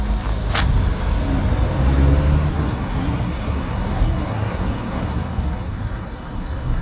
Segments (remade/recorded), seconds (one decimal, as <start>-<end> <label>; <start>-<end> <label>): 0.0-2.5 recorded; 2.5-6.8 remade